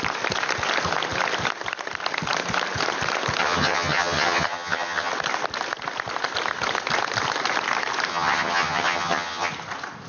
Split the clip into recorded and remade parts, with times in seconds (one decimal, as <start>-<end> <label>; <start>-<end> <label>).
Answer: 0.0-3.4 recorded; 3.4-5.1 remade; 5.1-8.1 recorded; 8.1-9.5 remade; 9.5-10.1 recorded